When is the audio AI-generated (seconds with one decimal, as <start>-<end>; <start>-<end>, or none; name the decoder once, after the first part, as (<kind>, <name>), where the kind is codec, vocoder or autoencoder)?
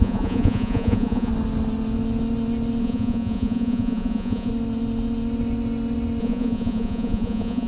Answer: 0.0-1.3 (vocoder, Vocos); 2.8-4.5; 6.2-7.7